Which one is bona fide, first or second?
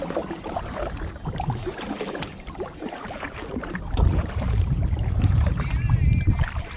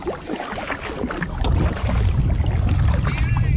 second